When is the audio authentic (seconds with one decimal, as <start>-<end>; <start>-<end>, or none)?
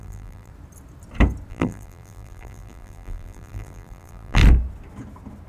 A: 0.5-1.5; 4.4-5.5